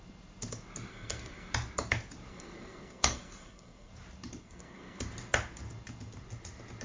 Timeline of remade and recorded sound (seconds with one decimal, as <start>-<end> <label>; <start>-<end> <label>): 0.0-0.9 recorded; 0.9-1.5 remade; 1.5-2.3 recorded; 2.3-3.9 remade; 3.9-4.4 recorded; 4.4-5.0 remade; 5.0-6.8 recorded